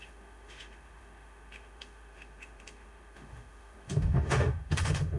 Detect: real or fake fake